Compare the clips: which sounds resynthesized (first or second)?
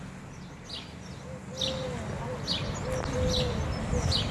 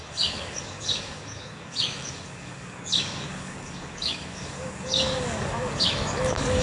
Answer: second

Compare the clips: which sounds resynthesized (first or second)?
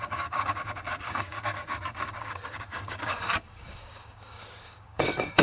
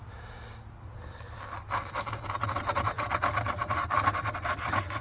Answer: first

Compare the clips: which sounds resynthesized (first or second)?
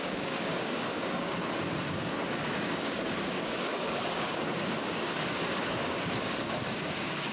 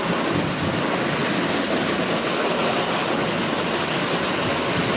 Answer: first